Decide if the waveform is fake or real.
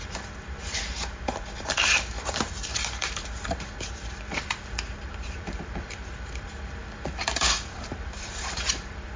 fake